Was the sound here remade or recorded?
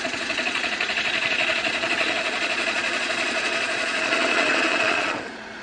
remade